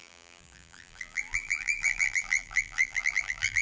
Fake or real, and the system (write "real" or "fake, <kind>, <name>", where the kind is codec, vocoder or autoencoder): fake, vocoder, BigVGAN v2